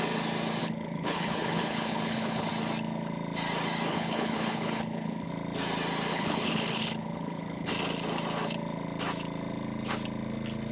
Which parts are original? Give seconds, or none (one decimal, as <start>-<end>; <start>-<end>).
0.0-0.6; 2.5-3.9; 5.3-6.1; 7.7-10.7